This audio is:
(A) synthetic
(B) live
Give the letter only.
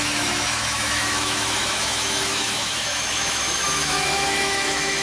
A